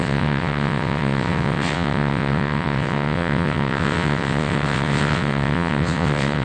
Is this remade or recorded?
remade